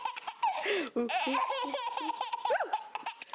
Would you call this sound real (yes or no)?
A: yes